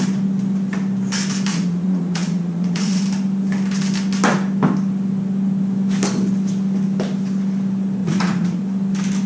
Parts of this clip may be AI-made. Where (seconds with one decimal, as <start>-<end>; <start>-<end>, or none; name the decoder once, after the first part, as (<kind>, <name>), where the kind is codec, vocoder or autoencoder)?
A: 1.5-3.0 (vocoder, Vocos); 8.0-8.6